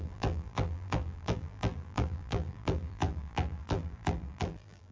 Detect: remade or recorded remade